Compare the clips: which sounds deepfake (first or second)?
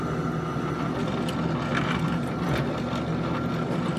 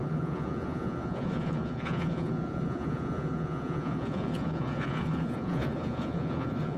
second